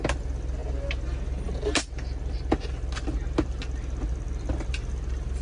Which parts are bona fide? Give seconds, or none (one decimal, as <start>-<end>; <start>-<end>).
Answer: 0.0-5.4